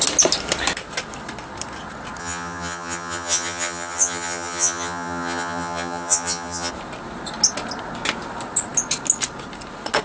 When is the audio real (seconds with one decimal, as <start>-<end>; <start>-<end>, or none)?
0.0-2.2; 6.7-10.0